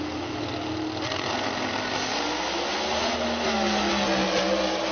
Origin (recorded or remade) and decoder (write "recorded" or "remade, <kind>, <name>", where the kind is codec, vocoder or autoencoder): recorded